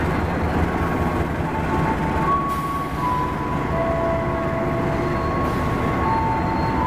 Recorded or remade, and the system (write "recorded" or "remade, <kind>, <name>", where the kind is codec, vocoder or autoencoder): recorded